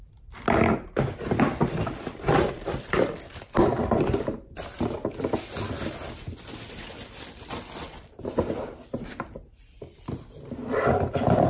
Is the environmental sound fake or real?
fake